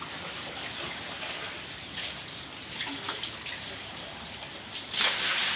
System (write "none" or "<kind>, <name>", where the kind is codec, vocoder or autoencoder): none